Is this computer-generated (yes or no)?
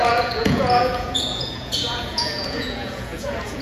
yes